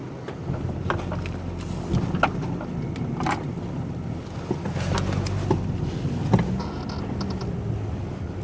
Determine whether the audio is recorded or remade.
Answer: recorded